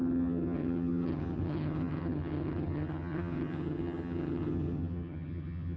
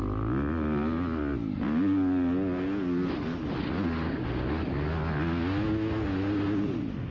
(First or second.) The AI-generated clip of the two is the first